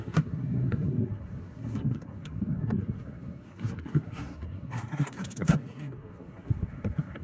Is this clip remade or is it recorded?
remade